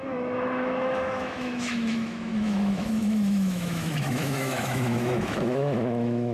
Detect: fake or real fake